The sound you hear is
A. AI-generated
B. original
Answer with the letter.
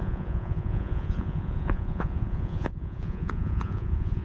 A